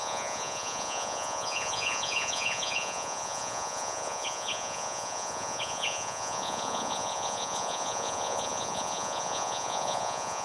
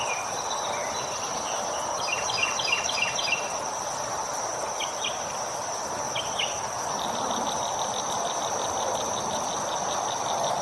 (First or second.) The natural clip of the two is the second